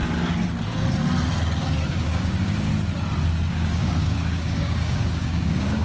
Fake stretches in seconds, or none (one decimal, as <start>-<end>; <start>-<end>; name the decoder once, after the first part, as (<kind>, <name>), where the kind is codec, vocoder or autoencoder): 1.9-2.7 (codec, DAC); 3.5-5.8

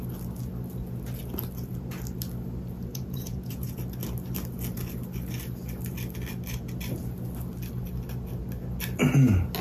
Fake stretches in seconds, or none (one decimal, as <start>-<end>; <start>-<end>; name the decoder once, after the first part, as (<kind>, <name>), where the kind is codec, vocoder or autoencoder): 2.9-3.8 (vocoder, Vocos)

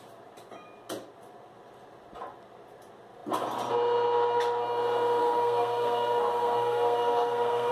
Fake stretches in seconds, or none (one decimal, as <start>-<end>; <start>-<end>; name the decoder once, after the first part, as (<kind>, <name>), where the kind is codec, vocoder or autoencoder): 5.2-7.7 (codec, SNAC)